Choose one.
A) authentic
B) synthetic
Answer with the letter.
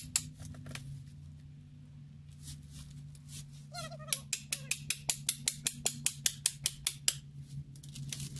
A